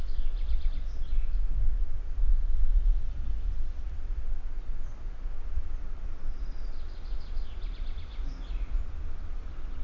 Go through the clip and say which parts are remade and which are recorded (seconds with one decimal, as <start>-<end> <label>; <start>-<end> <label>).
0.0-8.1 recorded; 8.1-8.8 remade; 8.8-9.8 recorded